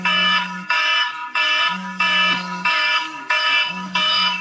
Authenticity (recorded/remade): remade